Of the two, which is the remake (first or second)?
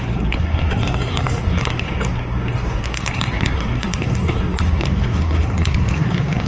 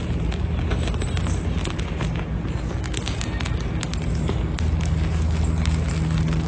first